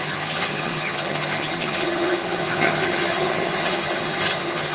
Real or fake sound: fake